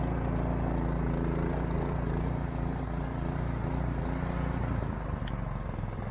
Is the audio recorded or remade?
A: recorded